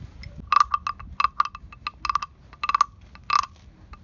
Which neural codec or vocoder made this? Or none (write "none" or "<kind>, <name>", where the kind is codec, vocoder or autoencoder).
none